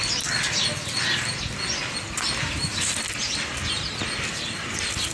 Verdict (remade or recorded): recorded